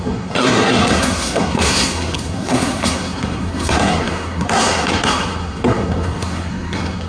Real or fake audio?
fake